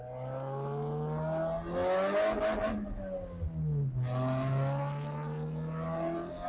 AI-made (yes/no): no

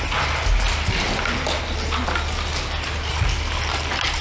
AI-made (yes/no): no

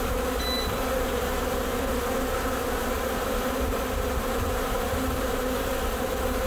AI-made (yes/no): no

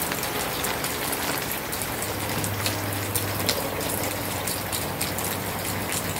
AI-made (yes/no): yes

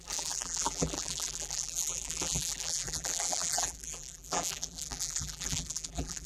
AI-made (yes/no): yes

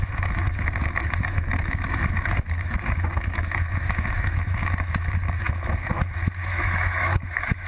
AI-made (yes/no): yes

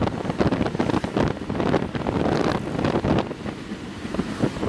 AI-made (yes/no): no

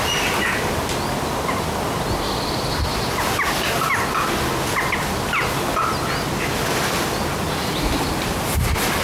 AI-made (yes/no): no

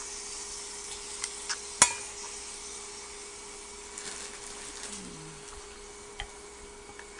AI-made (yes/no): no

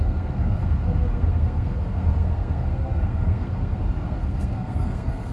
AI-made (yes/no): yes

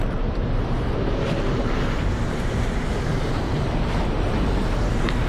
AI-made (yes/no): yes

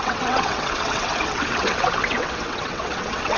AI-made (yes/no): yes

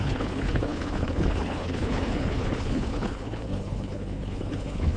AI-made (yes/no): yes